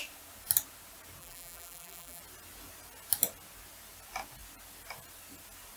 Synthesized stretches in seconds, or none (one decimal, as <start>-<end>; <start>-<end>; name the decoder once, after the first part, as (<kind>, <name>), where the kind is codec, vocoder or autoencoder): 1.2-2.2 (vocoder, BigVGAN v2)